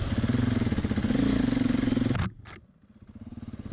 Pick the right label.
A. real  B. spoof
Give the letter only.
A